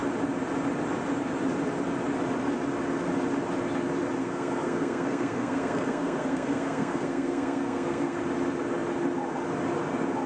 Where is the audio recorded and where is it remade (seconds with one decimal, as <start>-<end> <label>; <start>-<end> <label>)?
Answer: 0.0-4.2 recorded; 4.2-8.2 remade; 8.2-10.3 recorded